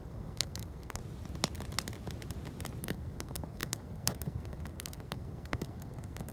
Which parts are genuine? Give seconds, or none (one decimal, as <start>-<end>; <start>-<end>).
1.0-2.8